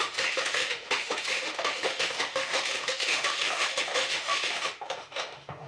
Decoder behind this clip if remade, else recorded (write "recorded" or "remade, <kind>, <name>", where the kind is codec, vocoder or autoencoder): remade, autoencoder, DAC-VAE